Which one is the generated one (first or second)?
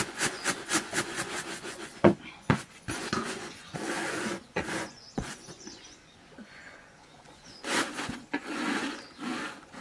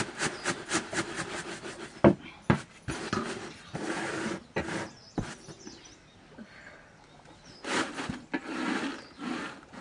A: first